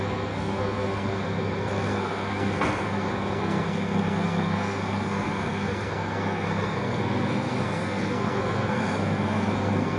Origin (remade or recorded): remade